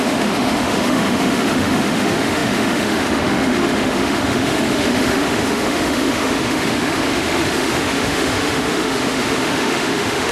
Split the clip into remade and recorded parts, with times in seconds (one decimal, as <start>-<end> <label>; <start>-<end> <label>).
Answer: 0.0-10.3 remade